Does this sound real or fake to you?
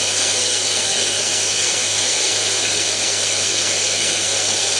fake